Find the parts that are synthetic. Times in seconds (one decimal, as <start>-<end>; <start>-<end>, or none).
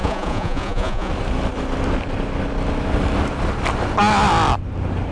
0.0-1.1